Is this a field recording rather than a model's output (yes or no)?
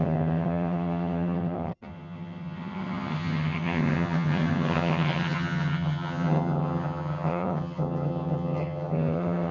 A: no